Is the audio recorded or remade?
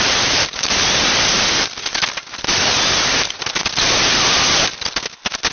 recorded